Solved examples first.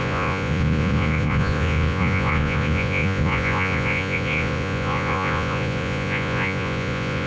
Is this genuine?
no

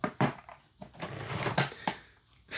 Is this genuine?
yes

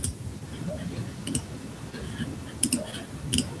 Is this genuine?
yes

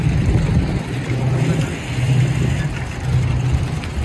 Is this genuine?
yes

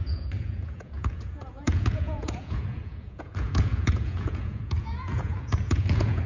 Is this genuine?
no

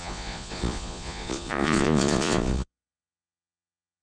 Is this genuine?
no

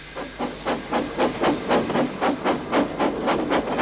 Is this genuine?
yes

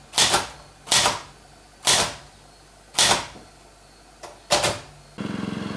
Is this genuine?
yes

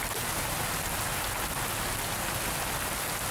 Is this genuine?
yes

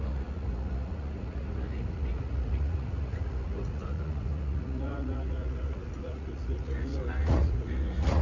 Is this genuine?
no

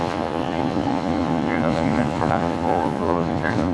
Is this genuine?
no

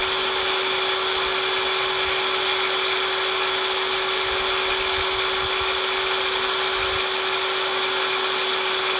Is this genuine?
yes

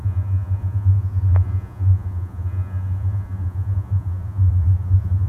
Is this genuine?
no